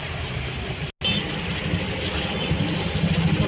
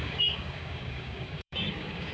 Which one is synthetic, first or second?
second